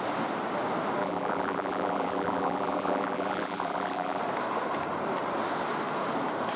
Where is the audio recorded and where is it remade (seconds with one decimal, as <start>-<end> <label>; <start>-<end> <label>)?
0.0-1.0 recorded; 1.0-4.2 remade; 4.2-6.6 recorded